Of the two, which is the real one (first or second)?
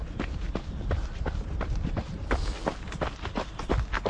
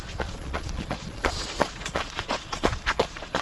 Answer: first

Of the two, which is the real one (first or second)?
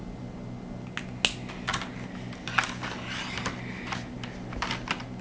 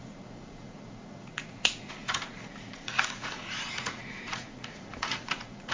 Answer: first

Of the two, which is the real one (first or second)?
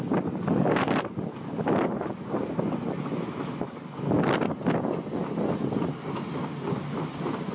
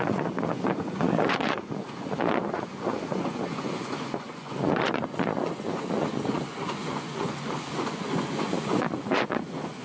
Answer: first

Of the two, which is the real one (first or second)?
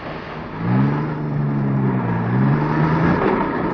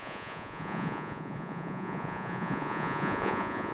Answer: first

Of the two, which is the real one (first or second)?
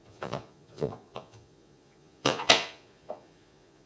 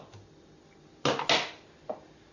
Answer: second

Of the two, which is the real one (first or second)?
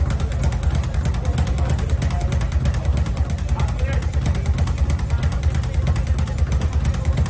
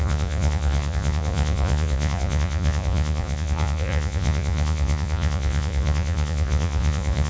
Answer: first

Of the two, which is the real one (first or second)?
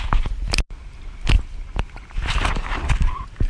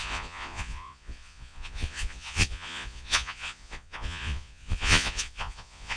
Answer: first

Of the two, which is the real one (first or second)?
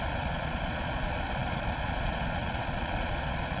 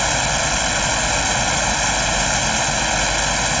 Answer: second